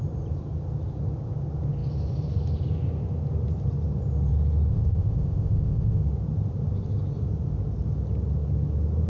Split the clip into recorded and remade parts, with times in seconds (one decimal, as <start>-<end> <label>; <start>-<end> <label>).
0.0-4.7 recorded; 4.7-6.0 remade; 6.0-9.1 recorded